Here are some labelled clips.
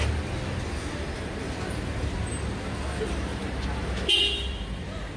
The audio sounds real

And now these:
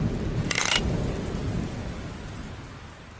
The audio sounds real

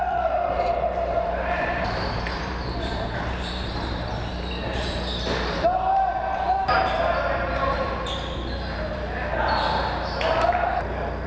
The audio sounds fake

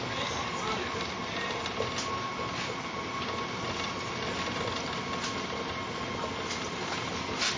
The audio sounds real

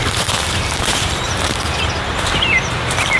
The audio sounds fake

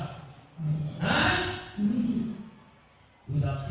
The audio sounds real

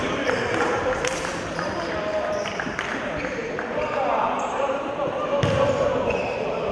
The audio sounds fake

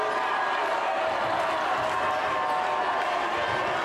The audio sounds real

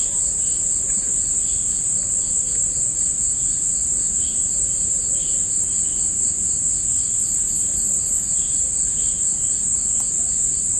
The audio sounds fake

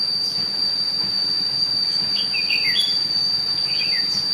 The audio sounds fake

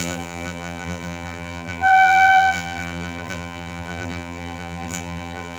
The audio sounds fake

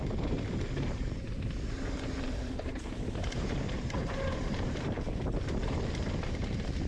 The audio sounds fake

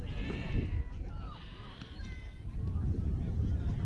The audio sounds fake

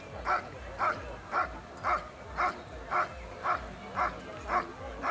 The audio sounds real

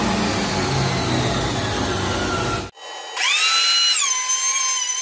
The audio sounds real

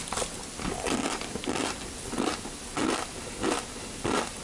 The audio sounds real